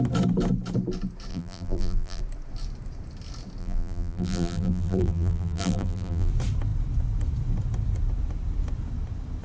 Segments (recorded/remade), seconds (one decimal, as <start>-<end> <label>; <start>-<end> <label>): 0.0-1.3 recorded; 1.3-2.2 remade; 2.2-3.6 recorded; 3.6-6.3 remade; 6.3-9.4 recorded